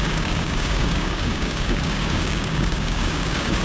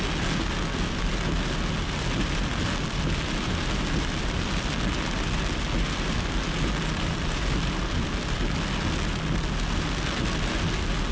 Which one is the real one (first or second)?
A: second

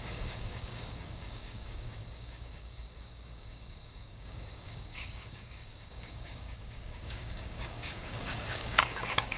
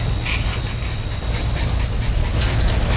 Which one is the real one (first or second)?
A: second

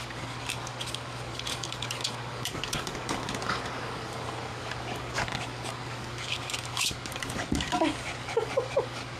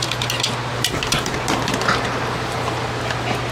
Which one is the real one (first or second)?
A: second